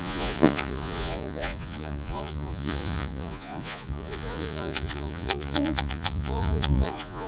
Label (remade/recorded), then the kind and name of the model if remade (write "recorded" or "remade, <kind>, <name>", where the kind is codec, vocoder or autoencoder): remade, vocoder, Vocos